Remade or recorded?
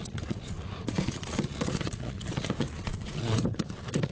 remade